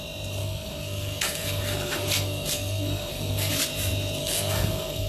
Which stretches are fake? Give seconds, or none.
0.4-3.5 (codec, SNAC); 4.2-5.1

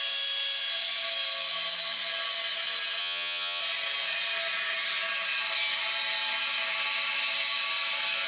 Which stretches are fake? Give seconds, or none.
3.0-3.6 (vocoder, HiFi-GAN)

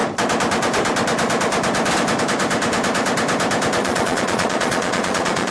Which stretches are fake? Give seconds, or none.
3.8-5.5 (vocoder, Vocos)

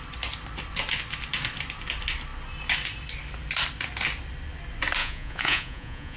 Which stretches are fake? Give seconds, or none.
5.0-6.2 (vocoder, Vocos)

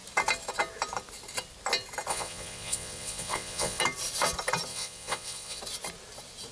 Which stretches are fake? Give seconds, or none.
2.1-3.8 (vocoder, Vocos); 4.7-5.6

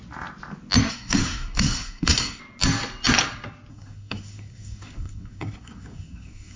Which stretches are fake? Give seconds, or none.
0.9-2.4 (codec, SNAC); 3.7-6.6

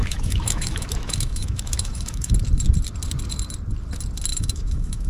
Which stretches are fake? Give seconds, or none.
0.0-2.3 (autoencoder, DAC-VAE); 4.3-5.1